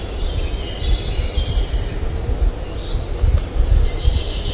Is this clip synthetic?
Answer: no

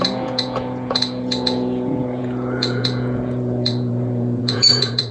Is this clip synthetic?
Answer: yes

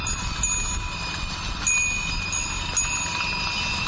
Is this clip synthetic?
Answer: no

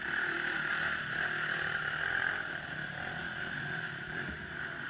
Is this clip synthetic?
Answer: no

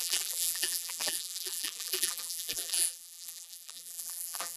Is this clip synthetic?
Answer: yes